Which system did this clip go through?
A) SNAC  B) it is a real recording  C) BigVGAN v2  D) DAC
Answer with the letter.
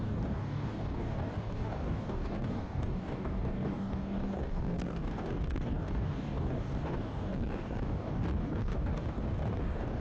D